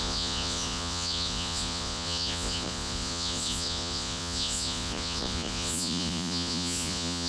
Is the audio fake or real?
fake